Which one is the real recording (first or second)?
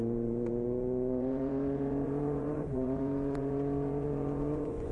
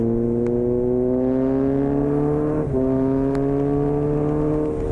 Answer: second